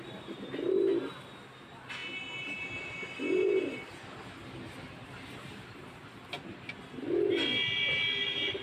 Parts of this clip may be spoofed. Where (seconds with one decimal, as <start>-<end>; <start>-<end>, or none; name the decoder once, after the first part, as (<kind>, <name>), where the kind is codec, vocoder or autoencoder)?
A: none